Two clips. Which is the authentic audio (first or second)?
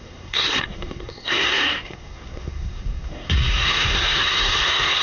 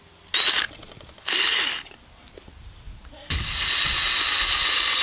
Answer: second